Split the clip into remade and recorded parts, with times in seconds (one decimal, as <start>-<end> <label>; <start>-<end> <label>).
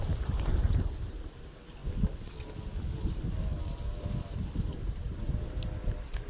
0.0-6.3 recorded